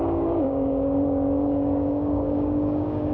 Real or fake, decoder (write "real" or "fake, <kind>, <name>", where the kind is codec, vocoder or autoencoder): fake, codec, DAC